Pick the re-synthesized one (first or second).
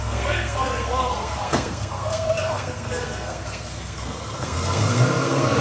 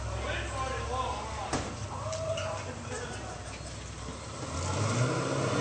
first